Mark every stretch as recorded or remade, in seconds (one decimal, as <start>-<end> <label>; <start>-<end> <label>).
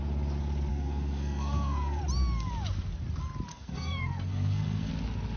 0.0-0.7 recorded; 0.7-2.0 remade; 2.0-3.5 recorded; 3.5-4.9 remade; 4.9-5.4 recorded